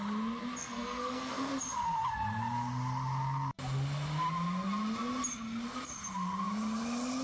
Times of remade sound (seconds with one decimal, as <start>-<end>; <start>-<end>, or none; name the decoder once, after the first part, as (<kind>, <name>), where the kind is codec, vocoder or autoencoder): 0.6-1.5 (codec, SNAC)